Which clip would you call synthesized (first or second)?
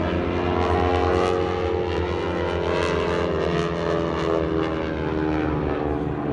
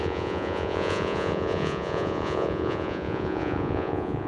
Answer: second